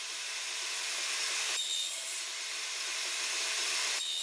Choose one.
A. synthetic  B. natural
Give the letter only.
A